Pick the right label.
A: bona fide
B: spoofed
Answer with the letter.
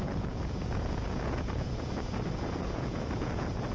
B